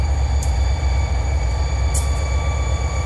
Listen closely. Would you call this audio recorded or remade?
remade